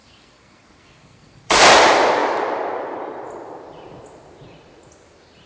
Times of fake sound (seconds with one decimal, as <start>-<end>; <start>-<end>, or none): 0.0-1.6